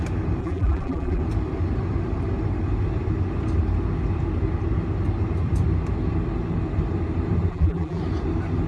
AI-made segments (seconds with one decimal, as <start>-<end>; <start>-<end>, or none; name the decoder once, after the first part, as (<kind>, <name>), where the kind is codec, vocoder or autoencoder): 0.4-1.2 (vocoder, BigVGAN v2); 7.5-8.0

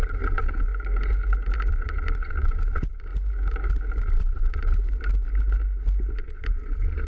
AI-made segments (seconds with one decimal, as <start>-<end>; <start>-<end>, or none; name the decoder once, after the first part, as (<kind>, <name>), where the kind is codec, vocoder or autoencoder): 0.0-0.7 (vocoder, Vocos); 1.7-3.1; 4.0-4.8; 6.2-7.1

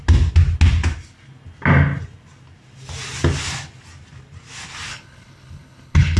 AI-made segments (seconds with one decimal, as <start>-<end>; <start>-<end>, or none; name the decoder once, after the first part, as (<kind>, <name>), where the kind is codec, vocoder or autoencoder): 4.9-6.2 (codec, HILCodec)

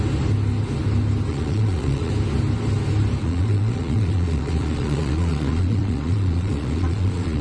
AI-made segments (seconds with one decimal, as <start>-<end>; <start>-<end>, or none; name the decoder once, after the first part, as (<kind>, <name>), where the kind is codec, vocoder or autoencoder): 1.3-2.1 (vocoder, Vocos); 3.2-7.4